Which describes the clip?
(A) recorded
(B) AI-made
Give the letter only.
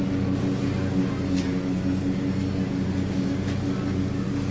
A